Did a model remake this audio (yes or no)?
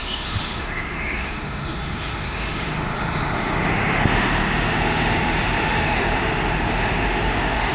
yes